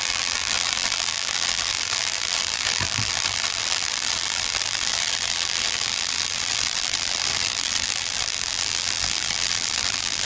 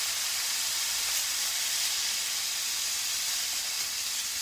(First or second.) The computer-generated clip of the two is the first